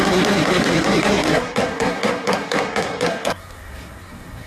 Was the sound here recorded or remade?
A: remade